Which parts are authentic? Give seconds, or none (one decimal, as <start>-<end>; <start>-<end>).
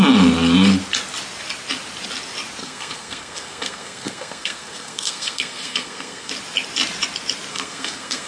0.0-2.6; 6.3-7.5